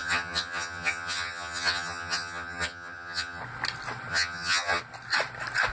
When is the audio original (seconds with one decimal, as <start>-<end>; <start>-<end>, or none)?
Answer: 3.4-4.1; 4.8-5.7